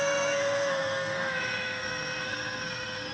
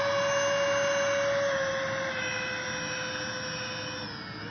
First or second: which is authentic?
second